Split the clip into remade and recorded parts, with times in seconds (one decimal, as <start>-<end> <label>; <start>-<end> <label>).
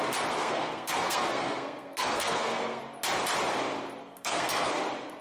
0.0-0.4 recorded; 0.4-2.8 remade; 2.8-4.0 recorded; 4.0-4.7 remade; 4.7-5.2 recorded